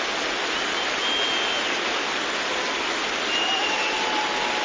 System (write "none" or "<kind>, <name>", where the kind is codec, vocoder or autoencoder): none